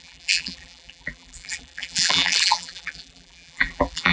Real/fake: fake